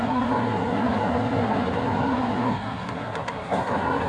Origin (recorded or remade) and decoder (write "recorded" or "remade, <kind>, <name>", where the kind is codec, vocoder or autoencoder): remade, codec, SNAC